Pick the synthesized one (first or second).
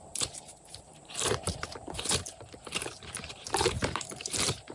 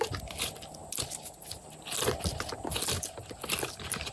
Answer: first